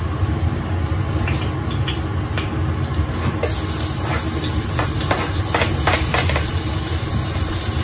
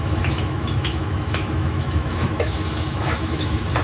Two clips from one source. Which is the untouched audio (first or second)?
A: first